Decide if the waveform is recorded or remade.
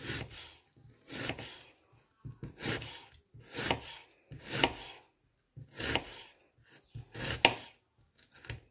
recorded